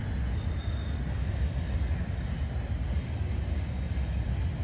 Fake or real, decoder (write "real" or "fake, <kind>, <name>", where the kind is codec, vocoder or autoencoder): real